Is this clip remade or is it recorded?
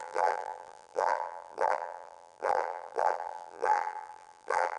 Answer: remade